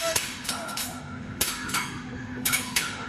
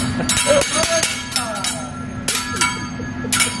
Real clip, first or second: second